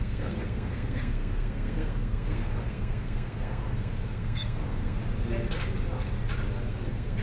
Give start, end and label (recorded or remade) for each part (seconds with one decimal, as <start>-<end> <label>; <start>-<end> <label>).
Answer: 0.0-5.0 remade; 5.0-6.7 recorded; 6.7-7.2 remade